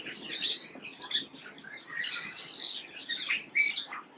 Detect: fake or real real